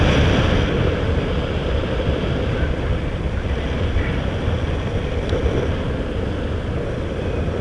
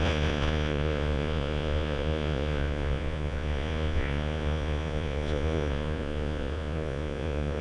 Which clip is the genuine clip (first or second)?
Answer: first